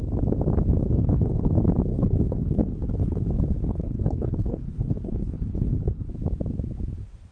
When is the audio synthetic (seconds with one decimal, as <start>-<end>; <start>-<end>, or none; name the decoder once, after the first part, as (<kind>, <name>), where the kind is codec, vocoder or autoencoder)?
0.8-1.5 (codec, HILCodec); 1.9-6.1